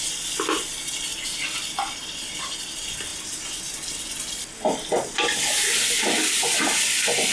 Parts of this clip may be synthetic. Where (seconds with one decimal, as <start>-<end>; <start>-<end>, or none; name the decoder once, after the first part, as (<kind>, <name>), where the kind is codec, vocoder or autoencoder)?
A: none